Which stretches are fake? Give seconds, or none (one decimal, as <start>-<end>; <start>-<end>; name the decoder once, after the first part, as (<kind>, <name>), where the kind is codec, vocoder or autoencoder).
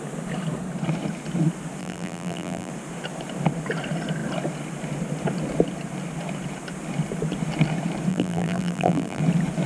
1.8-2.7 (vocoder, BigVGAN v2); 8.1-9.2